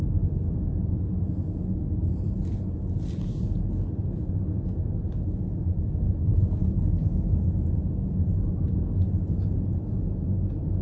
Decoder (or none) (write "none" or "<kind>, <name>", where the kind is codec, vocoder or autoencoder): none